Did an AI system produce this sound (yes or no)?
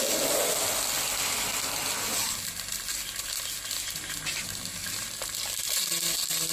no